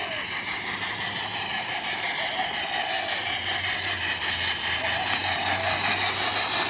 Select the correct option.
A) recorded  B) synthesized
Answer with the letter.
A